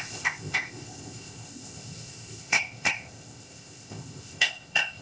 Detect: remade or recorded remade